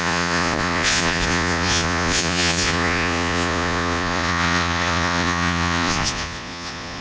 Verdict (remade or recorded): remade